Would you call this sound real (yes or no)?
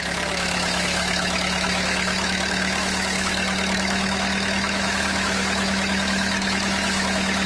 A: no